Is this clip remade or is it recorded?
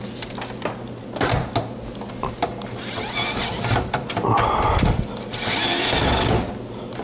recorded